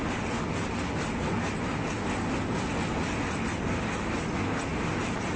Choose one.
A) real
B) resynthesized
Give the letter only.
A